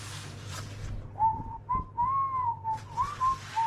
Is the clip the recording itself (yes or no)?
no